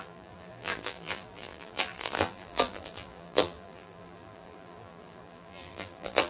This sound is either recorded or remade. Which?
remade